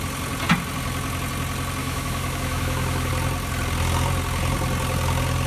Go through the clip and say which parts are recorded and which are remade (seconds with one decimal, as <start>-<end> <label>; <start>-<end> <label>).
0.0-1.8 recorded; 1.8-3.1 remade; 3.1-5.5 recorded